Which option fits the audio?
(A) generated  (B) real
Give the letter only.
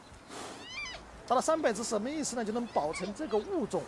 B